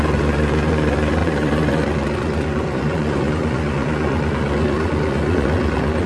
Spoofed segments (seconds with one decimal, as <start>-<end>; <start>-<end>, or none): 0.0-6.1